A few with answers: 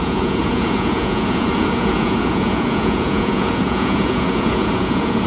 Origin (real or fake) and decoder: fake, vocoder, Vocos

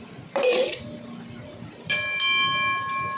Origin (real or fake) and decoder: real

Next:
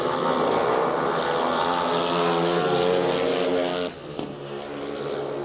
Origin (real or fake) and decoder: real